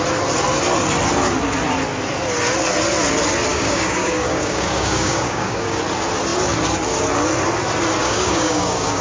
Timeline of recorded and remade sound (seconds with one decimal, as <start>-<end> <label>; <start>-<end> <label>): 0.0-3.5 recorded; 3.5-5.8 remade; 5.8-8.0 recorded; 8.0-9.0 remade